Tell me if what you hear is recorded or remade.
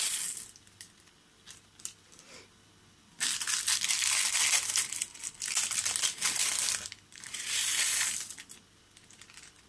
recorded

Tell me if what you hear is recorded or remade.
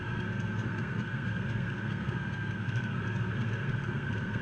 remade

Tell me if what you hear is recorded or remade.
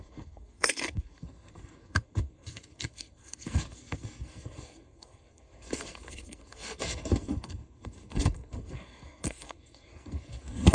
remade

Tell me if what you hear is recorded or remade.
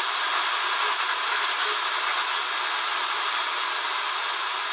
recorded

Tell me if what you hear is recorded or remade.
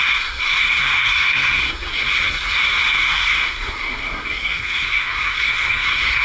remade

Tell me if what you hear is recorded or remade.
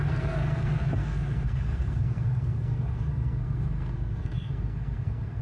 remade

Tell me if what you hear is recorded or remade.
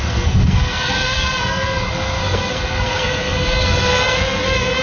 remade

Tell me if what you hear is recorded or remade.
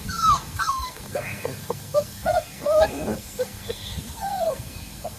remade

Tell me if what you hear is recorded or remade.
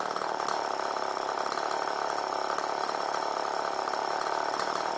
recorded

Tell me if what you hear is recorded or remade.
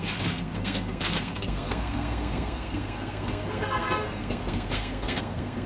remade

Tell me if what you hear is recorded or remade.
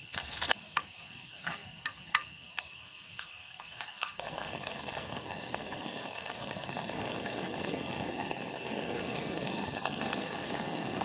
remade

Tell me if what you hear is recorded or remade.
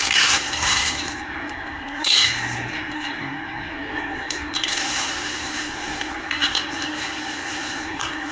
remade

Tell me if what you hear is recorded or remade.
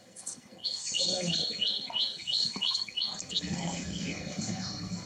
remade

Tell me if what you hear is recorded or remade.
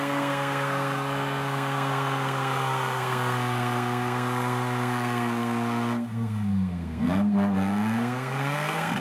remade